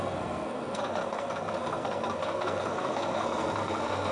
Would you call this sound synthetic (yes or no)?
yes